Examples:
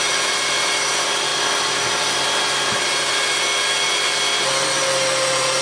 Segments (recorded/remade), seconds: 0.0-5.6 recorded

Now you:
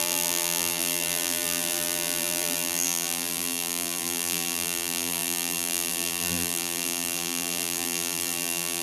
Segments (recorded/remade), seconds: 0.0-8.8 remade

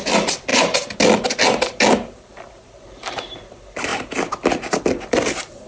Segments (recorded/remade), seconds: 0.0-0.5 remade; 0.5-2.6 recorded; 2.6-3.9 remade; 3.9-4.8 recorded; 4.8-5.7 remade

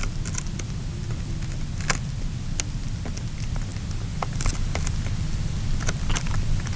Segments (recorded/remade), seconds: 0.0-6.8 recorded

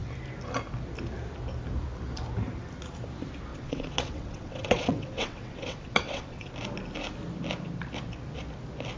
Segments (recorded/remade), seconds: 0.0-3.5 recorded; 3.5-6.5 remade; 6.5-9.0 recorded

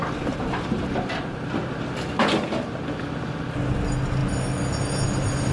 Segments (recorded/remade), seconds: 0.0-5.5 recorded